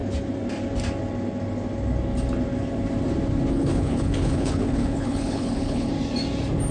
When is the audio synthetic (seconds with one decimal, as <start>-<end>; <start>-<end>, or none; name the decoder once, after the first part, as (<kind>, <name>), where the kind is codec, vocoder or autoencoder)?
3.5-5.9 (codec, HILCodec)